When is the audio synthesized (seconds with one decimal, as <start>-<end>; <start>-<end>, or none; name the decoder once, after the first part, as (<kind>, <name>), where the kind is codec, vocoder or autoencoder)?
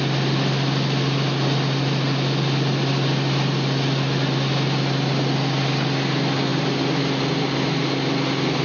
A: none